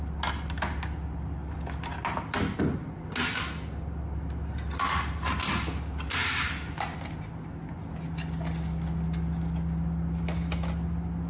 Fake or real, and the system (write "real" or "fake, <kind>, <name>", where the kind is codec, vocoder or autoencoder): real